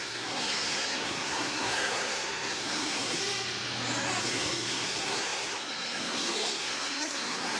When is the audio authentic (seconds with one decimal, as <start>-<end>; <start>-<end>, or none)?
3.2-4.2